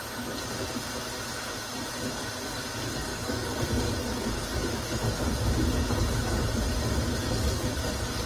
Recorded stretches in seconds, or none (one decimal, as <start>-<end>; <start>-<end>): 0.0-3.1; 3.6-4.0; 5.1-7.2; 7.9-8.3

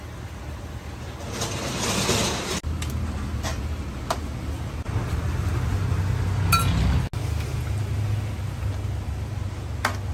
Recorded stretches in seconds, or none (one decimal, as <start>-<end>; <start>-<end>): 0.0-10.1